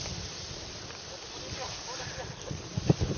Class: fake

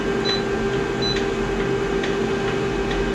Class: real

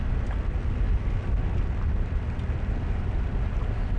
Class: real